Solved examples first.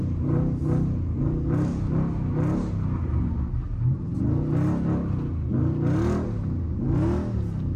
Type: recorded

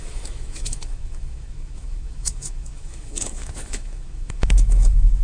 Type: remade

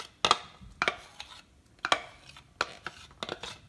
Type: recorded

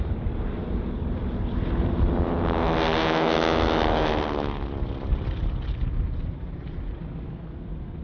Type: recorded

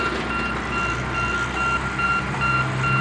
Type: recorded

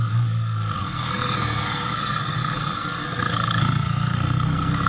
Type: remade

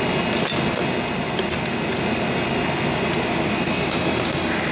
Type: recorded